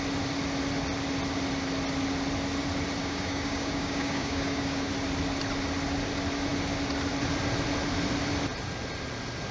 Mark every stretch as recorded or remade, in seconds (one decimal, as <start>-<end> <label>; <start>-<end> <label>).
0.0-3.0 recorded; 3.0-4.9 remade; 4.9-9.5 recorded